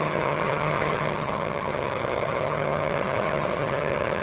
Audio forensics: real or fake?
fake